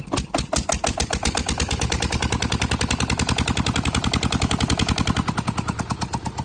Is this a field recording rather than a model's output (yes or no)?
yes